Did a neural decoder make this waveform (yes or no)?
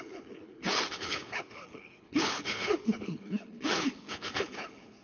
yes